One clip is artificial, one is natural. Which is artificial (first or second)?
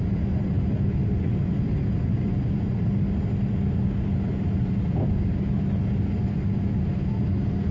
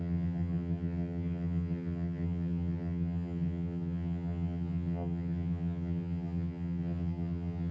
second